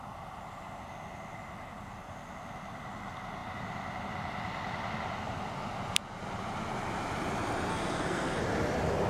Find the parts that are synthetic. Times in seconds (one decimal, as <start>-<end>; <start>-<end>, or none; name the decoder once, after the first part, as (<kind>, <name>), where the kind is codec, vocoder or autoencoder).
7.7-8.4 (codec, SNAC)